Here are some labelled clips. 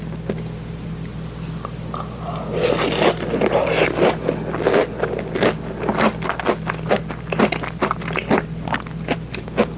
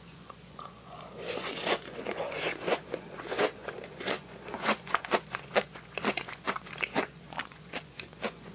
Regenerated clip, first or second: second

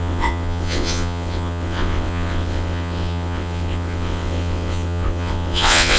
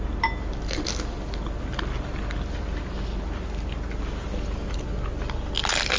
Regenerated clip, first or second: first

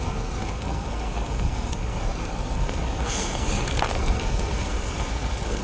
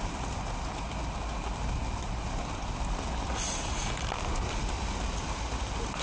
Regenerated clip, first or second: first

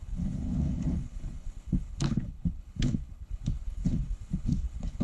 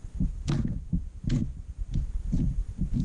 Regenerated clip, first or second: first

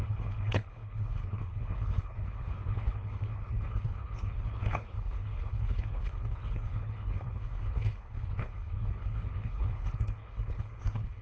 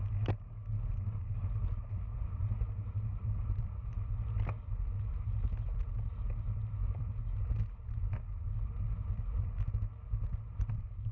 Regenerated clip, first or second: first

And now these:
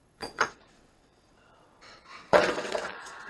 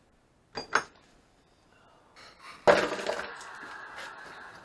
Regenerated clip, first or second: first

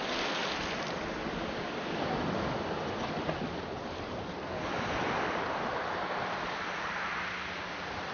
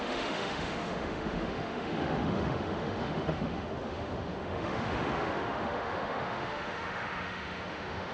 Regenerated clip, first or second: second